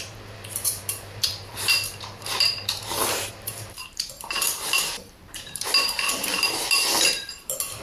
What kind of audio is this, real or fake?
fake